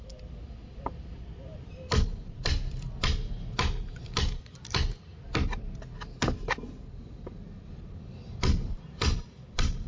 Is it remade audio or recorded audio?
recorded